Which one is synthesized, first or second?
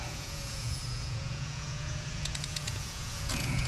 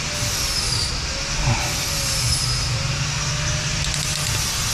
first